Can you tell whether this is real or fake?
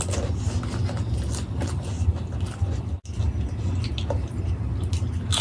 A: real